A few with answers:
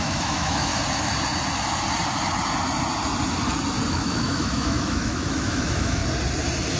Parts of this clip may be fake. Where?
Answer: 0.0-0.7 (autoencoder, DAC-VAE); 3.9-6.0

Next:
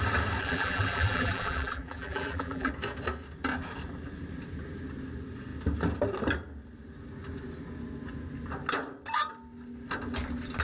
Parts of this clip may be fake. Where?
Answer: 0.4-2.7 (vocoder, BigVGAN v2)

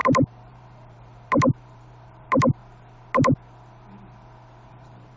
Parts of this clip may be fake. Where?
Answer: 0.0-2.6 (vocoder, BigVGAN v2); 4.7-5.2

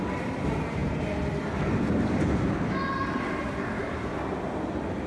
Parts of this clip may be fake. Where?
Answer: none

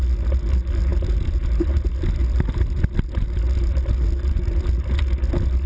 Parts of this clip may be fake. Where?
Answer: none

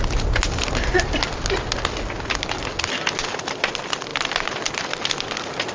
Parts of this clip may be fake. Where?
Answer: none